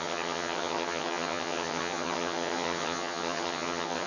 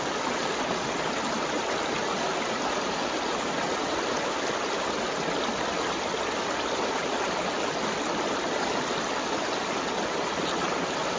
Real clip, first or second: second